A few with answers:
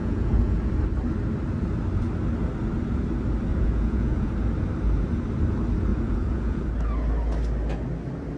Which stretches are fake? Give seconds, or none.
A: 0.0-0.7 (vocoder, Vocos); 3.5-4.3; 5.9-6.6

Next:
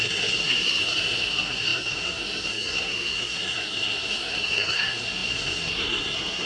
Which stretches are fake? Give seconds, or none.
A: 0.0-6.5 (codec, SNAC)

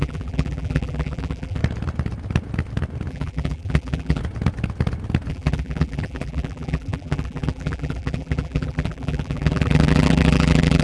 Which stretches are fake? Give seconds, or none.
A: 0.0-1.6 (vocoder, BigVGAN v2); 3.1-4.2; 5.3-10.8